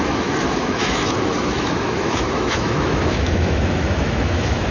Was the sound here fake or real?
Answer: fake